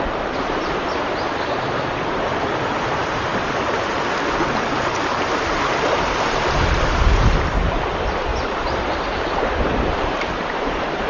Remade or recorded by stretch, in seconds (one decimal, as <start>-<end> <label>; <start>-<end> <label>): 0.0-3.3 remade; 3.3-5.8 recorded; 5.8-8.3 remade; 8.3-8.8 recorded; 8.8-11.1 remade